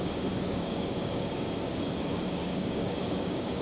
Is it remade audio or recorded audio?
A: remade